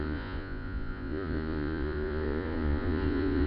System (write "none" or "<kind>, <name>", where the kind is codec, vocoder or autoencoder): vocoder, Vocos